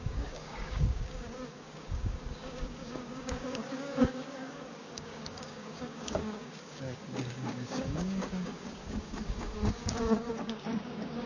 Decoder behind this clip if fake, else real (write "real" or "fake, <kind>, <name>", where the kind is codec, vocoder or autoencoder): fake, codec, DAC